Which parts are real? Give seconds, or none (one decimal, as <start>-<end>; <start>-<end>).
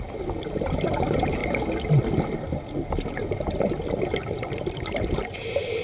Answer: 0.0-5.8